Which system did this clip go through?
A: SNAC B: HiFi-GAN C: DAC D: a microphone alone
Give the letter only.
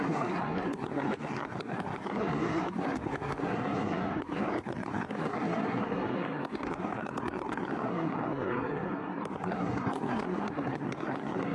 A